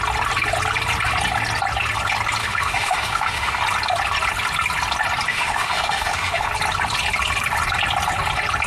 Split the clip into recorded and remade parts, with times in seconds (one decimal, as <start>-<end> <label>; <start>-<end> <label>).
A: 0.0-2.4 recorded; 2.4-3.6 remade; 3.6-5.3 recorded; 5.3-6.5 remade; 6.5-8.7 recorded